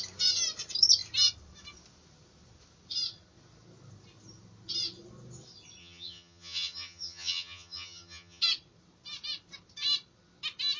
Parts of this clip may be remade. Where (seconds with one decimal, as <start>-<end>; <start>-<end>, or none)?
5.8-8.4